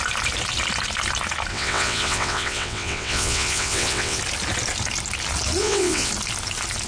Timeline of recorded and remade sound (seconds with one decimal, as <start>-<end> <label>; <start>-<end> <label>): 0.0-1.5 recorded; 1.5-4.2 remade; 4.2-5.6 recorded; 5.6-6.1 remade; 6.1-6.9 recorded